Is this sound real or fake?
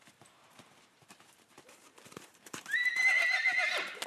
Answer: fake